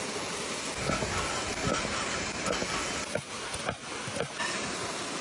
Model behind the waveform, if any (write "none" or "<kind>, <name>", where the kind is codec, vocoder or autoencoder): none